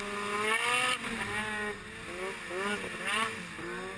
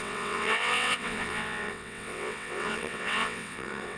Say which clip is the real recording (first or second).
first